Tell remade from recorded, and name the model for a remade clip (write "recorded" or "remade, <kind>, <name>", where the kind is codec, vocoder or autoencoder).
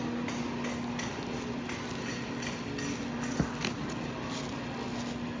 recorded